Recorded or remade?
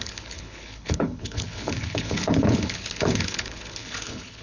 remade